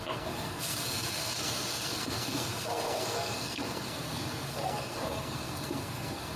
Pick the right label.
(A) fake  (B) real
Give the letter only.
A